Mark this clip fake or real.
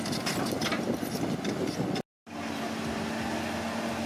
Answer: real